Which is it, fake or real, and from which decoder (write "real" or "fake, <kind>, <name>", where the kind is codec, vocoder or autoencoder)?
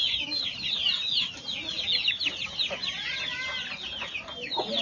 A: real